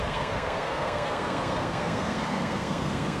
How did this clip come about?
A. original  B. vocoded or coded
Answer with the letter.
B